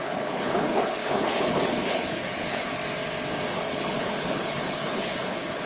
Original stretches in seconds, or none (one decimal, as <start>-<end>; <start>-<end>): 2.7-3.5